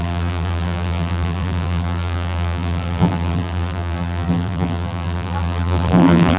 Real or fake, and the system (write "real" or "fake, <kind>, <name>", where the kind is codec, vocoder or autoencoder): fake, vocoder, BigVGAN v2